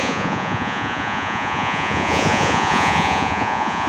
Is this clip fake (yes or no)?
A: yes